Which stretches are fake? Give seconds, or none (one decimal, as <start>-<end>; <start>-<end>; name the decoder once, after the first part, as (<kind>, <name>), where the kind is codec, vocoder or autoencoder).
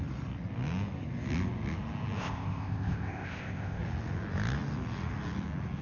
2.2-3.8 (codec, ZipCodec)